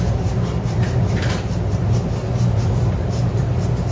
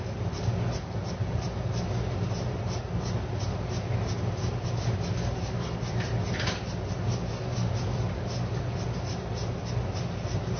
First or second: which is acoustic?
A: second